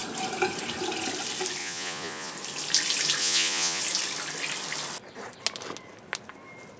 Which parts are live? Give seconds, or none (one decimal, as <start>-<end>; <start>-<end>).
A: 0.0-1.6; 2.3-3.2; 3.8-6.8